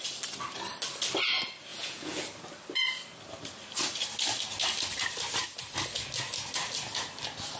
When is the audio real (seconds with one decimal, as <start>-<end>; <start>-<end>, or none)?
0.0-1.7; 2.2-7.6